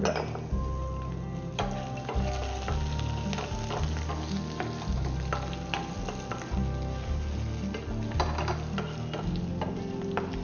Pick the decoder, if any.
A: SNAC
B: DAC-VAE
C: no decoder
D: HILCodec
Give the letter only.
C